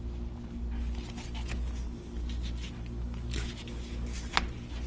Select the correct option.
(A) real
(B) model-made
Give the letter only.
A